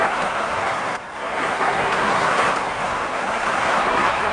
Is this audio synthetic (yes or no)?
yes